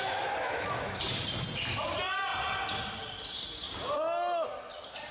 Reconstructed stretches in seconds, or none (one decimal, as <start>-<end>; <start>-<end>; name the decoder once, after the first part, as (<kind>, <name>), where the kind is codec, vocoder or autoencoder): 0.0-1.0 (autoencoder, DAC-VAE)